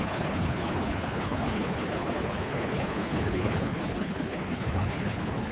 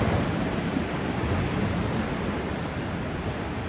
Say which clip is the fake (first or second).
first